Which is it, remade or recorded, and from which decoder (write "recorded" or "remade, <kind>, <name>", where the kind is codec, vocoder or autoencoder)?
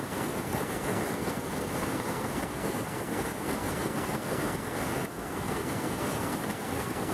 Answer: remade, codec, SNAC